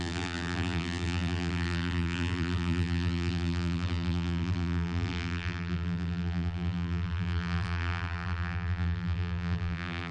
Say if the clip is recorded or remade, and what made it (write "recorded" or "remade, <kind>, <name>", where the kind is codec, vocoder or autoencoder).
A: remade, vocoder, BigVGAN v2